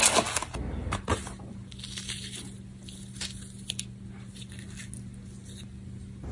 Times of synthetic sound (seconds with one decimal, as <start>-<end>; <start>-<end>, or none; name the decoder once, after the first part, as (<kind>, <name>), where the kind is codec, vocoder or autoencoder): none